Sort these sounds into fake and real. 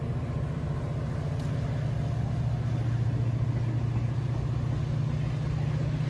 real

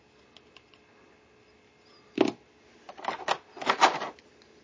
real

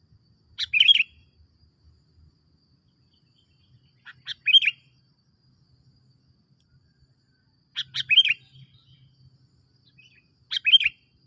real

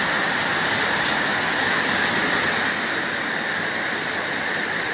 real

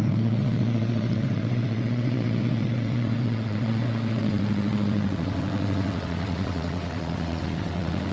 fake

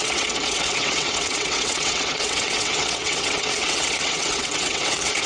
fake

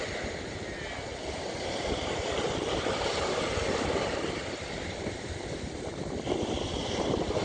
real